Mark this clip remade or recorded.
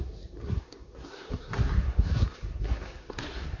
remade